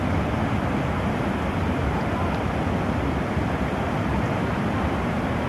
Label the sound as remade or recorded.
recorded